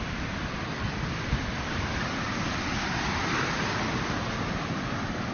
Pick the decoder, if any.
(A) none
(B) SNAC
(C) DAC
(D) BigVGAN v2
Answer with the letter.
A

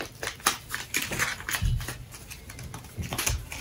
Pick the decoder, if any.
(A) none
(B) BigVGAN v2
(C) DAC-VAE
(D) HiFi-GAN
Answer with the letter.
A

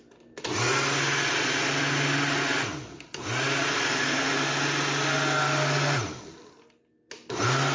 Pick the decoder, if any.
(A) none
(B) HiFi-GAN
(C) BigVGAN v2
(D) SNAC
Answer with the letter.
A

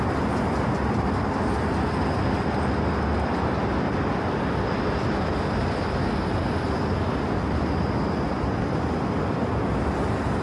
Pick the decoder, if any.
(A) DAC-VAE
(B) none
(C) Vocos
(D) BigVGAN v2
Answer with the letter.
B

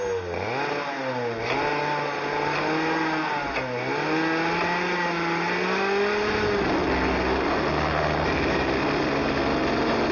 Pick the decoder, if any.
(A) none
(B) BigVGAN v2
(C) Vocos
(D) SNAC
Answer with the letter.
A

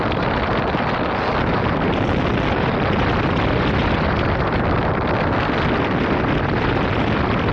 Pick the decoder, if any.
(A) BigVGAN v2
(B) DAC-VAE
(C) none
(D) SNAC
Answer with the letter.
C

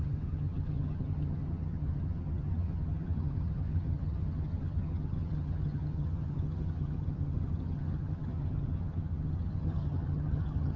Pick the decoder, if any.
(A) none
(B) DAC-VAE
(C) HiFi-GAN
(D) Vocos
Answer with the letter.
C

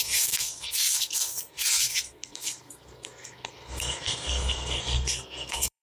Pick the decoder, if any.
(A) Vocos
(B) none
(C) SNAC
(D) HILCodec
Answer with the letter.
C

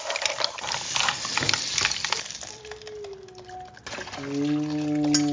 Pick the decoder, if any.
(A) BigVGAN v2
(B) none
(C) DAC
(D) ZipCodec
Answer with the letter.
B